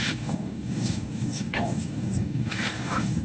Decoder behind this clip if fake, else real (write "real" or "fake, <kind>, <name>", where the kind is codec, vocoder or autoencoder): fake, codec, DAC